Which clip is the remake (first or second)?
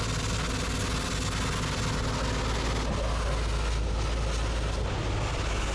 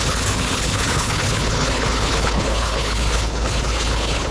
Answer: second